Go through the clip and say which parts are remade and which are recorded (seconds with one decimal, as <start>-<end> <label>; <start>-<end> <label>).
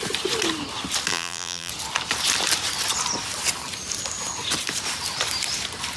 0.0-1.1 recorded; 1.1-1.7 remade; 1.7-6.0 recorded